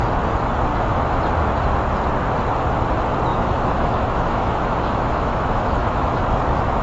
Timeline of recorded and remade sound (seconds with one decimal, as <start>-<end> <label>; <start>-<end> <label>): 0.0-0.7 recorded; 0.7-1.2 remade; 1.2-3.3 recorded; 3.3-6.2 remade; 6.2-6.8 recorded